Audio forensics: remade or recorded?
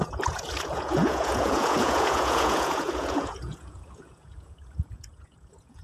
remade